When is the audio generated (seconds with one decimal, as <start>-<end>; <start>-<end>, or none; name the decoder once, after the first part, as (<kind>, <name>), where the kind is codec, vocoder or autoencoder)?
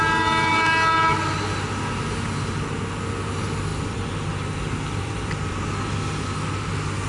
3.7-5.6 (vocoder, BigVGAN v2)